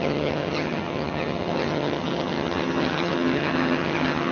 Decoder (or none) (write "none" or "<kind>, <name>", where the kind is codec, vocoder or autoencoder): vocoder, HiFi-GAN